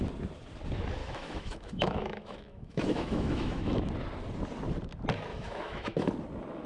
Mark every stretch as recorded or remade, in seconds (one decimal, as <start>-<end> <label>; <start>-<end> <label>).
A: 0.0-1.0 recorded; 1.0-3.9 remade; 3.9-5.3 recorded; 5.3-6.1 remade; 6.1-6.7 recorded